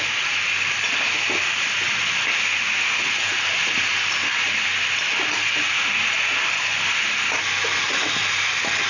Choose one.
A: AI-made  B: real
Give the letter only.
B